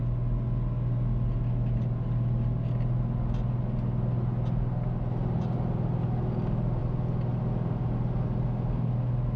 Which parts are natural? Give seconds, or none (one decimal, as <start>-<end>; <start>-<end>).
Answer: 0.0-9.4